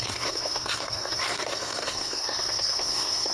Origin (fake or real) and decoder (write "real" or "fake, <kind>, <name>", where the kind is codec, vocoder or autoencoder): fake, codec, SNAC